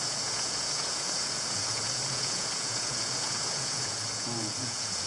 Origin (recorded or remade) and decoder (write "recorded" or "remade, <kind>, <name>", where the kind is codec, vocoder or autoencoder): remade, vocoder, Vocos